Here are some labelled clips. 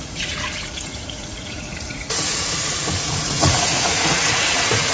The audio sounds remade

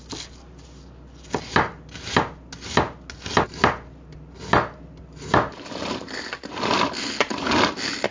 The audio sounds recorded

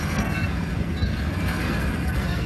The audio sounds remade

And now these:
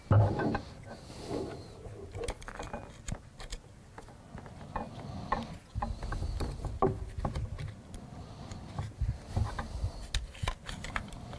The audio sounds recorded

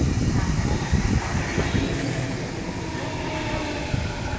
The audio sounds recorded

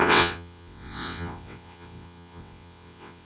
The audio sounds remade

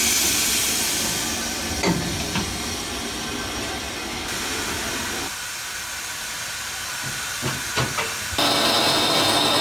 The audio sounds recorded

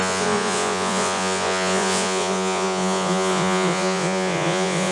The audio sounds remade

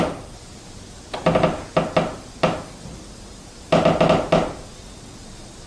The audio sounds recorded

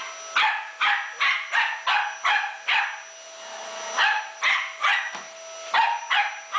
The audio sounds recorded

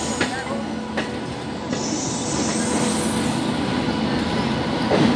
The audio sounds recorded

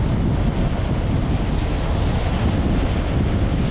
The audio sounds recorded